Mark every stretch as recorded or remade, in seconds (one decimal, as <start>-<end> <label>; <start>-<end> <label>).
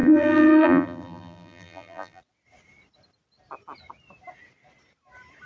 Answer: 0.0-2.2 remade; 2.2-5.5 recorded